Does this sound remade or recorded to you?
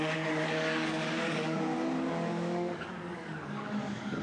remade